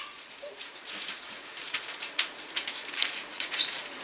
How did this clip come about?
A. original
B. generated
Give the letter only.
B